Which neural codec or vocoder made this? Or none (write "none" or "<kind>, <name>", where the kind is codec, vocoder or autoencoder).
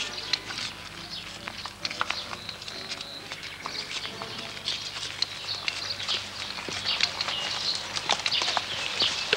none